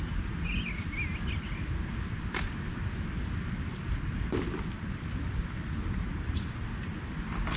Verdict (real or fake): real